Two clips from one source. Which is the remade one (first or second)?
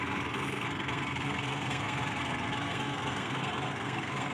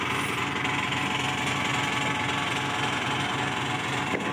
first